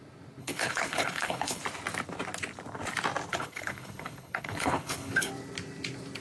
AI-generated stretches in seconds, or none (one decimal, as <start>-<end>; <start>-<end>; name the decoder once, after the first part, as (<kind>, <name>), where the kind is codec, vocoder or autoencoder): 0.4-1.6 (codec, HILCodec); 3.3-5.3